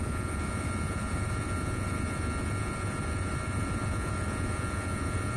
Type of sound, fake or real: fake